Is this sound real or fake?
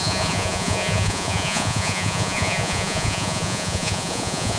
fake